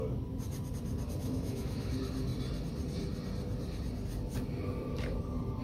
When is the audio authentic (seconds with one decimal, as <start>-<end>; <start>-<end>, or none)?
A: 0.0-1.2; 1.9-5.6